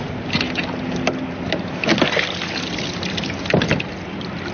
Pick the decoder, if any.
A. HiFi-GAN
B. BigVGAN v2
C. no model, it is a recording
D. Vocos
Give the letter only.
C